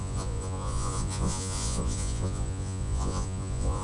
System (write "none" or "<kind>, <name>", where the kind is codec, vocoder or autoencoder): vocoder, Vocos